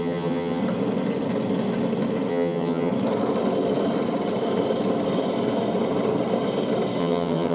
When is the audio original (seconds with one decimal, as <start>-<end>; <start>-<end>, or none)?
0.6-2.3; 2.9-7.0